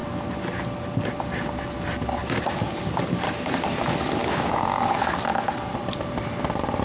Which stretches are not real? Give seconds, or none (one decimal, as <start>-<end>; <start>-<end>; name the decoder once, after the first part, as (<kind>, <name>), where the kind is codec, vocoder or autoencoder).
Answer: 4.2-4.9 (codec, DAC)